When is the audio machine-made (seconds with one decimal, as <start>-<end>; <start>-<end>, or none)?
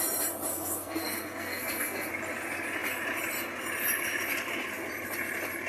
0.5-2.1